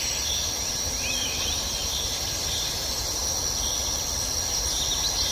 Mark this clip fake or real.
real